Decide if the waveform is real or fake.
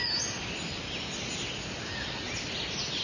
real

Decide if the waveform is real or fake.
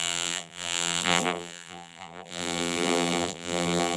fake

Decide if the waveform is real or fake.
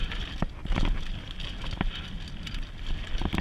real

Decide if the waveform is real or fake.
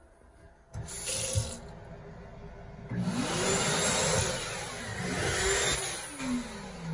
real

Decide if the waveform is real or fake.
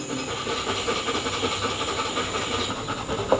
real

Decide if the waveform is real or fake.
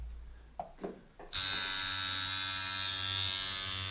real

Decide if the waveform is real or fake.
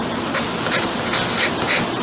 real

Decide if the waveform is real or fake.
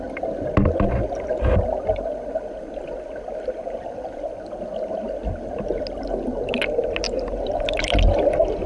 real